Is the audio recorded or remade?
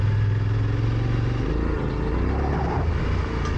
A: recorded